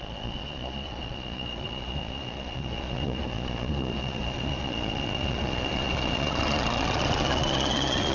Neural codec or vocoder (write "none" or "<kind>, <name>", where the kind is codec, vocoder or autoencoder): vocoder, Vocos